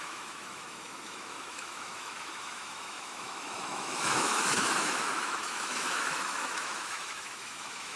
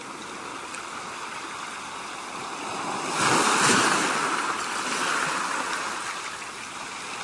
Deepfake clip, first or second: first